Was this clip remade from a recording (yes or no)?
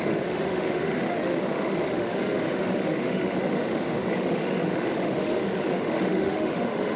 yes